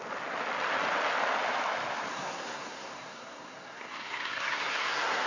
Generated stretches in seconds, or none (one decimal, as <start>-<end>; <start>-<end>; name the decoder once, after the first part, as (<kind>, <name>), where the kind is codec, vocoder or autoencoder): 2.1-5.3 (codec, SNAC)